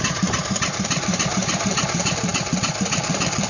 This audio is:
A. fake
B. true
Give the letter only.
A